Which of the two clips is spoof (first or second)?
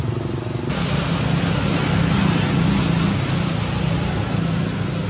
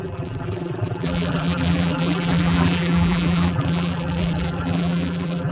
second